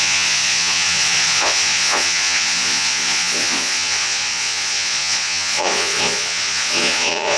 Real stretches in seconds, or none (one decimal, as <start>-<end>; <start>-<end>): none